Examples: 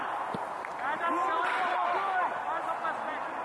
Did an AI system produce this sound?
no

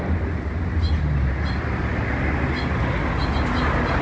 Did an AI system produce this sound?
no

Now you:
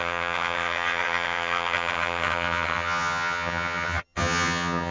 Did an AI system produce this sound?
yes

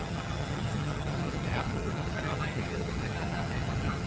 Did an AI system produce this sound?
yes